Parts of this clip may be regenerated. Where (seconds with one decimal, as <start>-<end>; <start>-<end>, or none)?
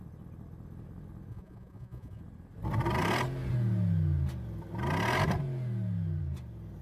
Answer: 1.3-2.2